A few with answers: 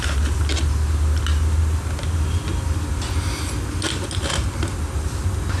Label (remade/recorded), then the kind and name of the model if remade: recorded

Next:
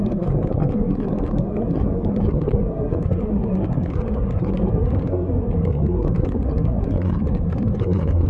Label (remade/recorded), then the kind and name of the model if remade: remade, codec, SNAC